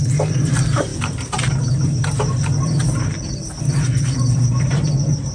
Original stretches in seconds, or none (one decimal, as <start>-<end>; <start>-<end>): 0.0-5.3